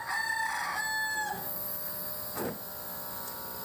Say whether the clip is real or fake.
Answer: real